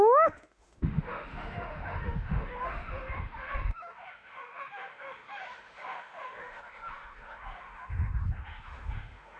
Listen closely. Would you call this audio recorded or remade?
remade